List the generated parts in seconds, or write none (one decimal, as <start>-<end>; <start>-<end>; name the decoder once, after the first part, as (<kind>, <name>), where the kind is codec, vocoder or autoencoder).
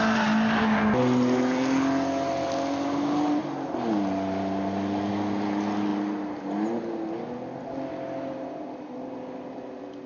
none